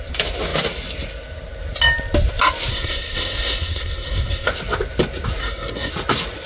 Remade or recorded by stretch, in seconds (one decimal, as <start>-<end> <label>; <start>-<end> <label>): 0.0-2.7 recorded; 2.7-4.5 remade; 4.5-5.4 recorded; 5.4-5.9 remade; 5.9-6.5 recorded